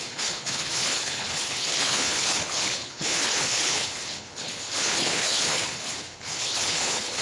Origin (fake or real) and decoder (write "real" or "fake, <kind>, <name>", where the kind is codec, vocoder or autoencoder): fake, codec, HILCodec